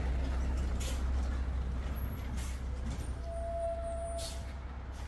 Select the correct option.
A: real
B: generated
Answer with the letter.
A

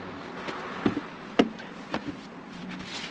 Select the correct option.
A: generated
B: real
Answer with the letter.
B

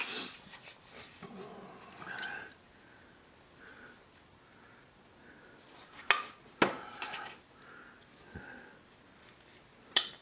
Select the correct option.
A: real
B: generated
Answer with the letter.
A